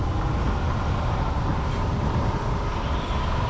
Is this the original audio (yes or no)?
yes